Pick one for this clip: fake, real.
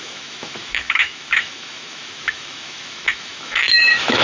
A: fake